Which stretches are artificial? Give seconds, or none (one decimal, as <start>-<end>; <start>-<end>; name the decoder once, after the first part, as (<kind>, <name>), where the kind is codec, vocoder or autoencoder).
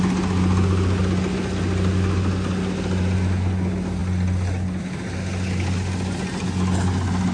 none